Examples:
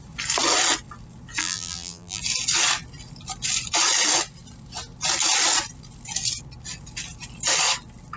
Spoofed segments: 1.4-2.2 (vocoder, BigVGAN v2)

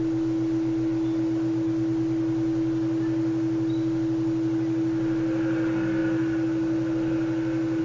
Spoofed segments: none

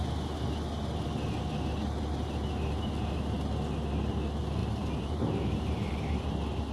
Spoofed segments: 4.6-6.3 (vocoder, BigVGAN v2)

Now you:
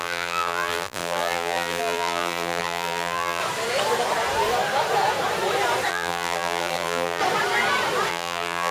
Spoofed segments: 0.0-3.4 (vocoder, BigVGAN v2); 5.9-7.2; 8.1-8.7

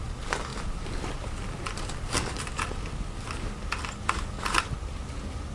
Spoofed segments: 0.0-0.5 (vocoder, BigVGAN v2); 3.8-5.5

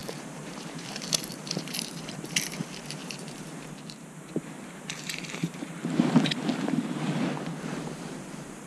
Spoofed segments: 0.0-8.7 (vocoder, BigVGAN v2)